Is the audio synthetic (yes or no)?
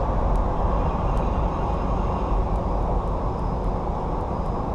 no